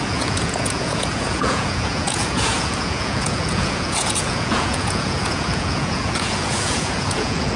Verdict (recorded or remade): remade